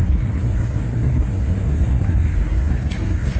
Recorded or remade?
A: remade